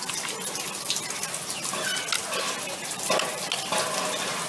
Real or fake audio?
real